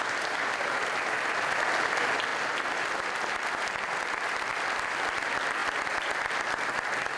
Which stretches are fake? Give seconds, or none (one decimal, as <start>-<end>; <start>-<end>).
none